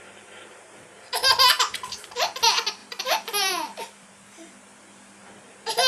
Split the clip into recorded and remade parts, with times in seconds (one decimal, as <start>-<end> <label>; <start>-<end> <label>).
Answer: 0.0-5.9 remade